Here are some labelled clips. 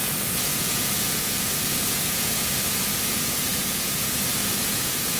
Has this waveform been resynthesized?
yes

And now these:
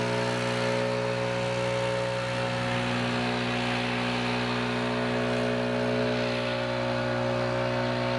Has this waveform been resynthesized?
no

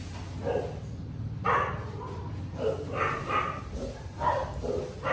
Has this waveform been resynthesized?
no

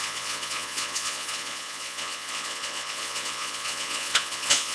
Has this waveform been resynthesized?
yes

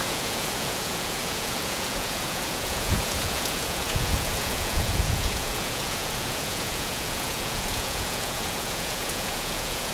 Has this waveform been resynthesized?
yes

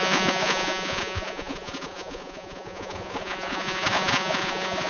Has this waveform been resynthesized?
yes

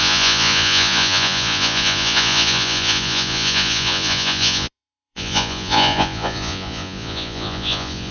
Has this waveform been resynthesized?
yes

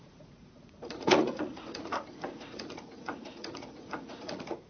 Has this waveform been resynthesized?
yes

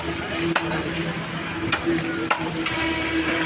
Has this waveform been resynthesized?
no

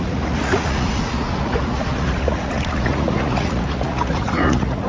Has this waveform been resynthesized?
yes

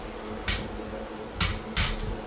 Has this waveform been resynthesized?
no